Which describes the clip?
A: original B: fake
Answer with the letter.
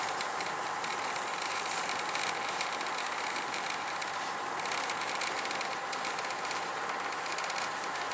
B